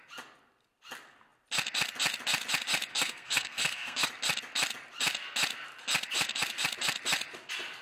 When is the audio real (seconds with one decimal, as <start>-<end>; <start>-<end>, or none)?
0.0-2.9; 4.1-7.8